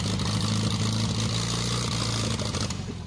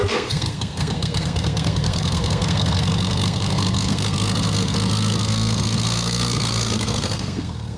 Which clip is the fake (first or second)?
second